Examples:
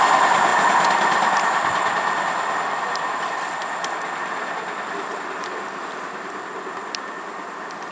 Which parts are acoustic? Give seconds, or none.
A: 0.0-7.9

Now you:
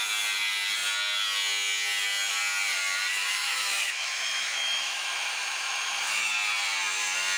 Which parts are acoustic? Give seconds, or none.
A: 0.0-3.3; 6.3-7.4

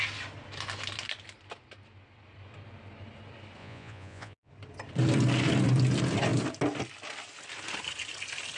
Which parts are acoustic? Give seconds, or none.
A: 0.0-3.6; 4.5-8.6

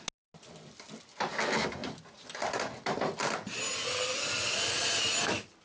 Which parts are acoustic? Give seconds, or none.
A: 0.0-5.6

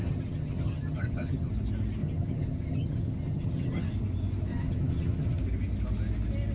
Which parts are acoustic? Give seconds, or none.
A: 1.5-2.0; 3.9-4.5; 5.4-6.5

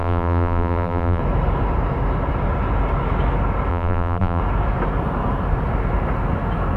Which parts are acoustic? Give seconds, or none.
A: 1.2-3.7; 4.4-6.8